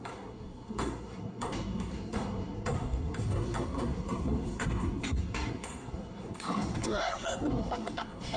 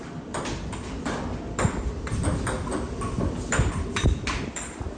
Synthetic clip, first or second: first